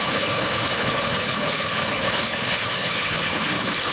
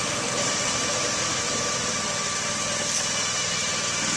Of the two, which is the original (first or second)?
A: second